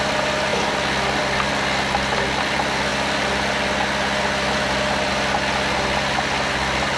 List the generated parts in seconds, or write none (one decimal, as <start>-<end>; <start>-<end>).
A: none